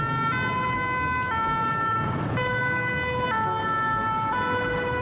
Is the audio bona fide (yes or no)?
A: yes